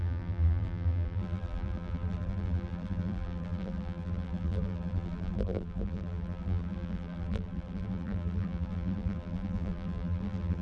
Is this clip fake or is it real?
fake